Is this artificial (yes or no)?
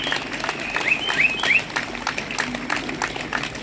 no